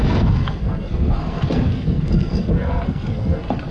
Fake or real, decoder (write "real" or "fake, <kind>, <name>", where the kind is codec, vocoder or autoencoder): fake, codec, SNAC